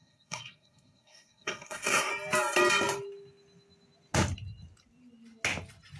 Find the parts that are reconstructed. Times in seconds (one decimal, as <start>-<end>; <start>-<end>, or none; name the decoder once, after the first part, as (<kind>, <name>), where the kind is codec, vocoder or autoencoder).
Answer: 0.0-2.1 (codec, SNAC)